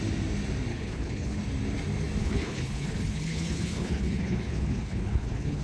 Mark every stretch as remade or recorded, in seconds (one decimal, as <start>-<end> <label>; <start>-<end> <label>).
0.0-0.7 recorded; 0.7-1.4 remade; 1.4-2.2 recorded; 2.2-5.6 remade